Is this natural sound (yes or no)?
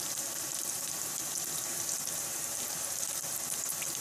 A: no